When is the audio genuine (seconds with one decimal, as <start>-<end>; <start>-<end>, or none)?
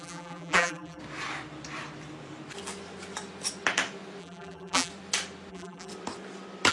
1.0-4.2; 4.9-5.5; 5.9-6.7